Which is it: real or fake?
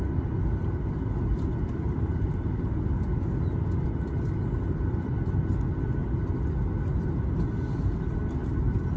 real